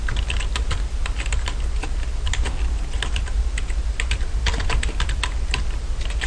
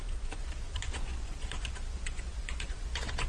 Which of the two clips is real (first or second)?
first